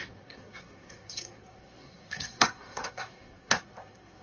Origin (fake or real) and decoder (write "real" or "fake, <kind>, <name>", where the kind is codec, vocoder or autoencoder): fake, codec, SNAC